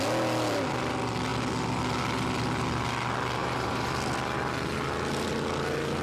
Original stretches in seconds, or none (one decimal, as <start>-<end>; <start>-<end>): 0.0-3.4; 3.9-6.0